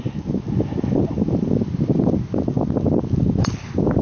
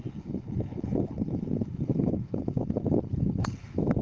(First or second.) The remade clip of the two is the second